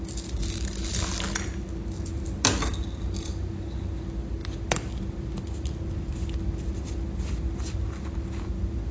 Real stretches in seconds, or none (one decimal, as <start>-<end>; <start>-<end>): 0.0-8.9